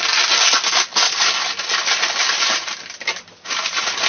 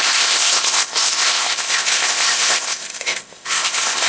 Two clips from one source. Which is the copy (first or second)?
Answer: second